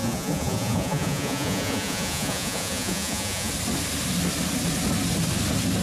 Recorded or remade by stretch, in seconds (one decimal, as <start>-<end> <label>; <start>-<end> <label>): 0.0-3.5 remade; 3.5-5.8 recorded